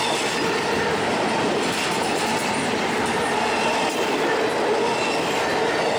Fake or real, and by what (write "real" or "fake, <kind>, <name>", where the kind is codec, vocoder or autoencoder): real